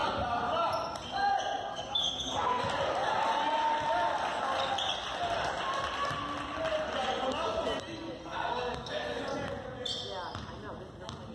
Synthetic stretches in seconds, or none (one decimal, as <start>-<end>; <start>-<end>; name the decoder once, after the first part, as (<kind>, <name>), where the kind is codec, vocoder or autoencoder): 1.7-2.6 (codec, SNAC); 8.2-9.2